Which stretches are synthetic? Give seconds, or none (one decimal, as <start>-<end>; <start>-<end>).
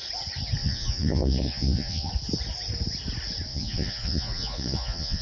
0.6-2.1; 3.5-5.2